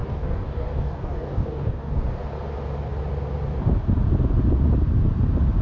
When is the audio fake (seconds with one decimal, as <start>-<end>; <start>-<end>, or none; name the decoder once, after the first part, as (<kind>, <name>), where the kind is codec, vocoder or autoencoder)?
0.0-1.9 (codec, DAC)